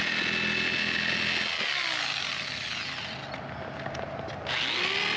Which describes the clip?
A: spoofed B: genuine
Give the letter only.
B